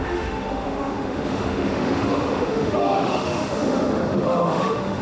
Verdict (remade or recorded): remade